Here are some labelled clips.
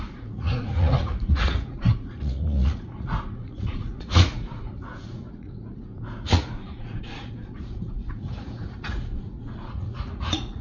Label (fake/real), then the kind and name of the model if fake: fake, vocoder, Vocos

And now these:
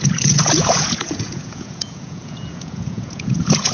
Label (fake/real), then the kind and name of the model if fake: fake, vocoder, Vocos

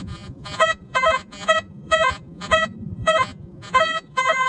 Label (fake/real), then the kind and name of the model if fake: fake, vocoder, Vocos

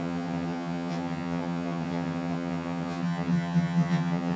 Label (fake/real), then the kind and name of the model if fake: fake, vocoder, HiFi-GAN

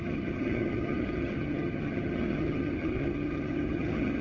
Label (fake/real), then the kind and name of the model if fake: fake, vocoder, HiFi-GAN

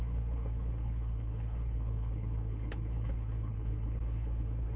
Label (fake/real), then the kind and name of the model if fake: fake, codec, HILCodec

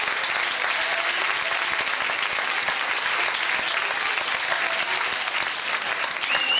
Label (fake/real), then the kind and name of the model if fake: real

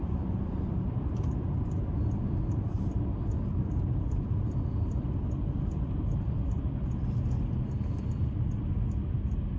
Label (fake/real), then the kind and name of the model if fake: fake, vocoder, BigVGAN v2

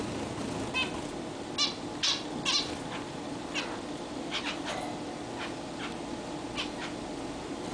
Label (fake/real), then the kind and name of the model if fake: real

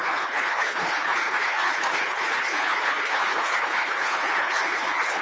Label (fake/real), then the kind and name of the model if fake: fake, codec, HILCodec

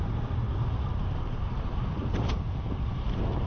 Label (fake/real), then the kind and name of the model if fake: fake, vocoder, BigVGAN v2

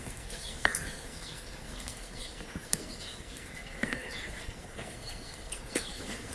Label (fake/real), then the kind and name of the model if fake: fake, codec, SNAC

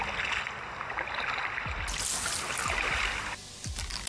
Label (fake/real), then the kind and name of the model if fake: real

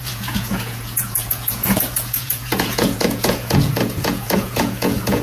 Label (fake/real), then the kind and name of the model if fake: fake, vocoder, Vocos